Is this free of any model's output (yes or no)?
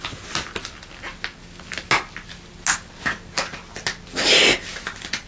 yes